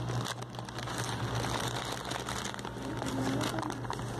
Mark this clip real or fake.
real